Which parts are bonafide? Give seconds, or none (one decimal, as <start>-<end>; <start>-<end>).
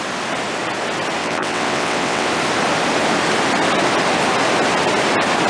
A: 0.0-1.2; 2.3-5.5